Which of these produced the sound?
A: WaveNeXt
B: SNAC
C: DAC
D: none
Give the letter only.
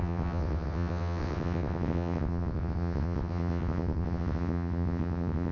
A